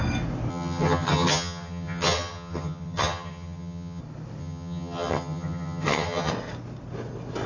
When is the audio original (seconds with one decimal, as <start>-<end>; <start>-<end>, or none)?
0.0-0.5; 4.0-4.4; 6.3-7.5